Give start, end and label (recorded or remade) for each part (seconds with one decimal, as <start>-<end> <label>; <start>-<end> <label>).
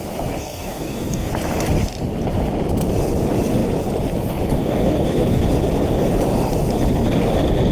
0.0-0.4 recorded; 0.4-1.3 remade; 1.3-4.6 recorded; 4.6-5.5 remade; 5.5-7.7 recorded